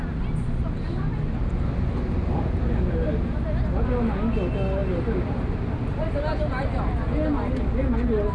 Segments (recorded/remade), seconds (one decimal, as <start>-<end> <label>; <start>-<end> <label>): 0.0-8.3 recorded